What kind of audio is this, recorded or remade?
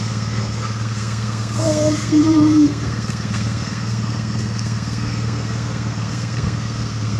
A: remade